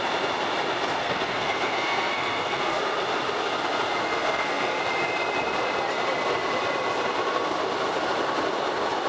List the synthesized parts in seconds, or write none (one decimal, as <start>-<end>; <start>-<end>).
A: 1.0-2.8; 4.0-4.8

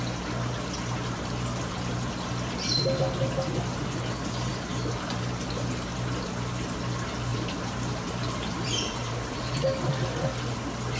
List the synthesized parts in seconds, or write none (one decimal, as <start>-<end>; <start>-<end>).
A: 7.3-9.4

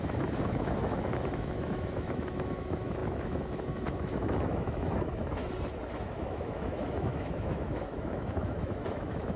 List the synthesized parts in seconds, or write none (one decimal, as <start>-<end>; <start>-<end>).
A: 0.0-5.4; 5.9-9.4

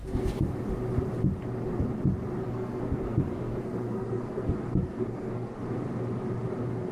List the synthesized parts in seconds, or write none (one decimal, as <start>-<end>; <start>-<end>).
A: 0.0-0.6; 2.4-5.9

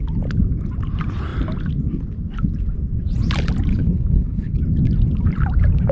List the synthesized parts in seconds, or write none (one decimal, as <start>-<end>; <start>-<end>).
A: 3.7-4.6

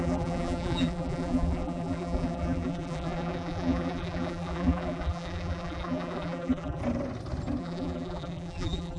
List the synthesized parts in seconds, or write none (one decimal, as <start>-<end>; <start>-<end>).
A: 0.0-6.8; 7.6-9.0